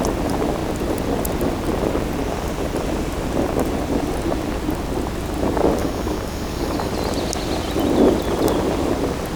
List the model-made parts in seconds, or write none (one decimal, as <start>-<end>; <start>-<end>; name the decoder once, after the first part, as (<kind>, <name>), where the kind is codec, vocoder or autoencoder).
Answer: 5.8-6.9 (codec, DAC)